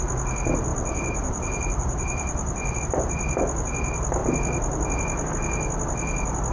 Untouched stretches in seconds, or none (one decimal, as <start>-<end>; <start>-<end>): 0.0-0.7; 2.8-6.5